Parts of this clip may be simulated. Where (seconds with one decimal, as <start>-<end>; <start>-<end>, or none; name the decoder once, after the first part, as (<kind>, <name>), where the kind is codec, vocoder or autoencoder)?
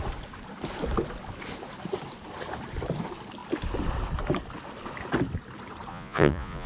5.9-6.7 (vocoder, Vocos)